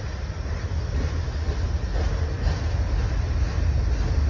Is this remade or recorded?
recorded